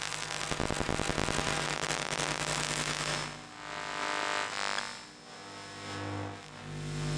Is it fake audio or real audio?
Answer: real